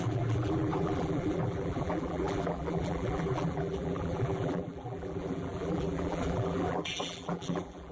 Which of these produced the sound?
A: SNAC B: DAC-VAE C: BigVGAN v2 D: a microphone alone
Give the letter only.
C